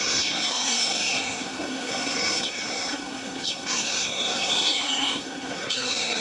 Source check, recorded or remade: remade